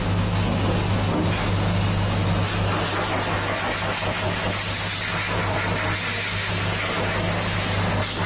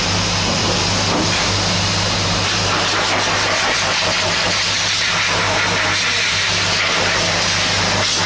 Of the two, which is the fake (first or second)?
second